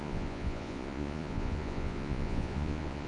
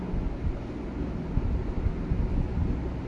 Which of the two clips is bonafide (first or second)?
second